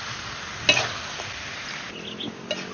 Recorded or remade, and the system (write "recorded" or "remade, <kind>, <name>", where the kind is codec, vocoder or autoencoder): recorded